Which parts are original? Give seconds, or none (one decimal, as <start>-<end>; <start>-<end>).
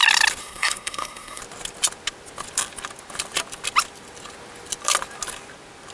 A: 0.0-0.4; 1.4-5.9